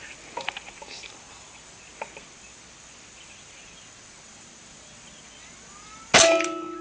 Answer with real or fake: real